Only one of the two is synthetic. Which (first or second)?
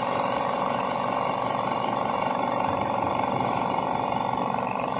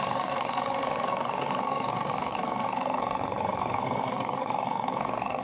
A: second